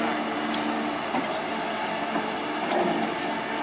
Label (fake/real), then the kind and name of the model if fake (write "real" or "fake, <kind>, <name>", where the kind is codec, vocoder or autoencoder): real